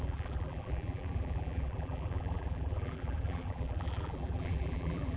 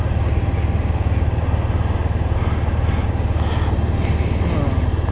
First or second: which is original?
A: second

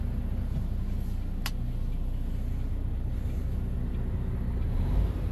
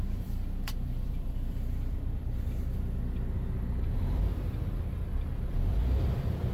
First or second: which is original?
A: first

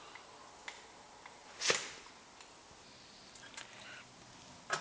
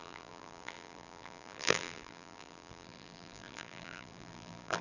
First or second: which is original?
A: first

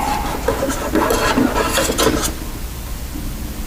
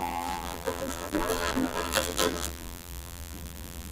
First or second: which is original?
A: first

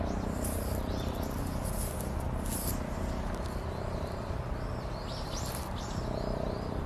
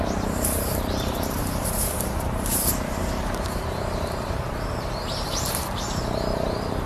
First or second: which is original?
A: first